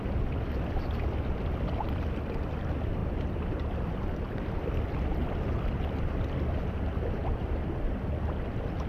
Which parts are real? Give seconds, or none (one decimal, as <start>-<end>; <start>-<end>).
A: 0.0-3.0; 4.4-7.2; 8.2-8.9